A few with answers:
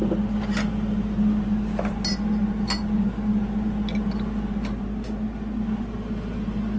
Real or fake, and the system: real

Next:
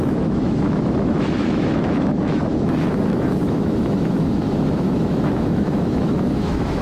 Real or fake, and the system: fake, autoencoder, DAC-VAE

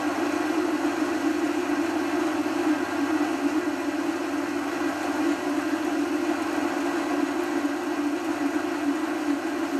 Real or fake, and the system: real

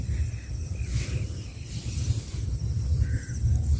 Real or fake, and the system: real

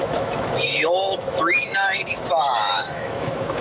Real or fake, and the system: fake, autoencoder, DAC-VAE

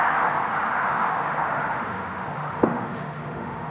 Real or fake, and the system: fake, autoencoder, DAC-VAE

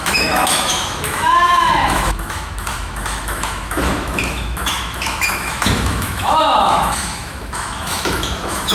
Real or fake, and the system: fake, autoencoder, DAC-VAE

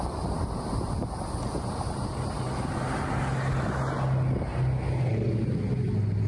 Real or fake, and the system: real